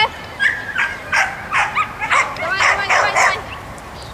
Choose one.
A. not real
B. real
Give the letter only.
A